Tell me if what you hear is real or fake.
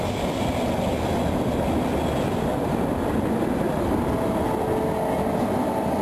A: real